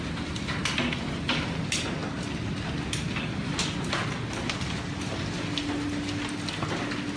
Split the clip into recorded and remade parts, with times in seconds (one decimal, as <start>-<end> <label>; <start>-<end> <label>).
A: 0.0-7.2 recorded